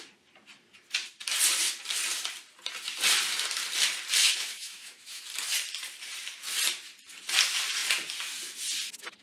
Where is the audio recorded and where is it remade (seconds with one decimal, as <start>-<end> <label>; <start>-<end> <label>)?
0.0-4.2 recorded; 4.2-5.2 remade; 5.2-9.2 recorded